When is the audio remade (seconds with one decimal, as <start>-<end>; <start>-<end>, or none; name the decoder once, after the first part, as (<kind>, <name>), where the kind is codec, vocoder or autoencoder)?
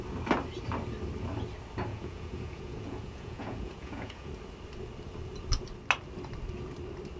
1.9-4.3 (vocoder, Vocos)